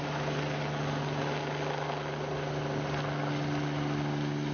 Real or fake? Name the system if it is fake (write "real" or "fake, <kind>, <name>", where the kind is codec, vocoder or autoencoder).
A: real